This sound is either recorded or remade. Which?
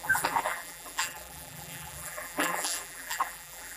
remade